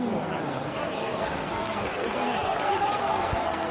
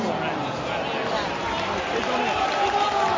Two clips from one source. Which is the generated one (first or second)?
first